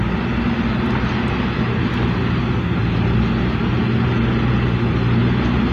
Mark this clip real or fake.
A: real